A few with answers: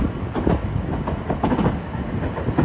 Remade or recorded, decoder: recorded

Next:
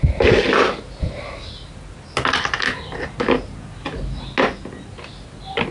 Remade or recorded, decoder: recorded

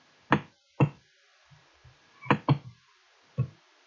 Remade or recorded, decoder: recorded